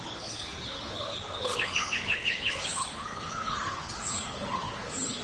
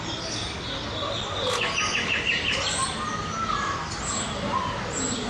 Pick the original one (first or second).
second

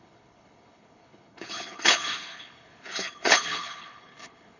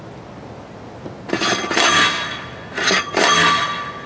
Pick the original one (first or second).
second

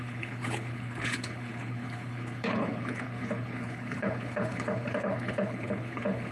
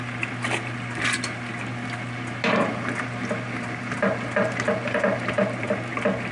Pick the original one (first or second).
second